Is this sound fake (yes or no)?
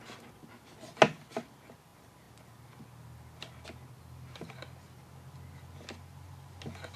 no